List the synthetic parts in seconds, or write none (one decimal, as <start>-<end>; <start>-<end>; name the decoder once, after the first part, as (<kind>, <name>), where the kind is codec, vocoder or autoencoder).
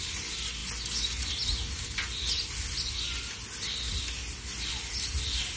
none